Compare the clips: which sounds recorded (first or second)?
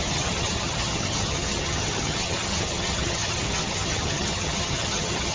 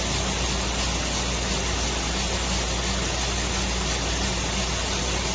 second